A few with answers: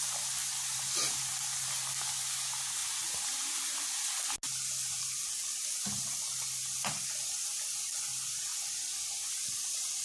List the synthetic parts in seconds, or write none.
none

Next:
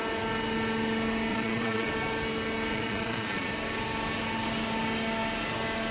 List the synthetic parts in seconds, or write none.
1.3-1.9 (vocoder, Vocos); 2.7-3.5

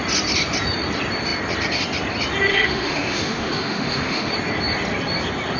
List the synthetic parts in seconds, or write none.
2.5-4.3 (autoencoder, DAC-VAE)

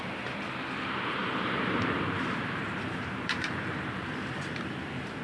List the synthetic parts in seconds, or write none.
0.0-5.2 (vocoder, BigVGAN v2)

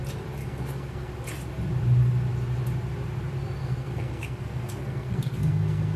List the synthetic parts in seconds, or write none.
0.4-1.1 (codec, SNAC); 3.6-6.0